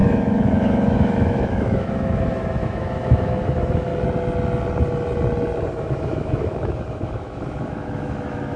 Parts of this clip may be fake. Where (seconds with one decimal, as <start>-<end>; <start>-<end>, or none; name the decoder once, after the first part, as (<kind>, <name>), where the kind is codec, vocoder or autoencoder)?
0.0-3.9 (autoencoder, DAC-VAE); 5.7-8.6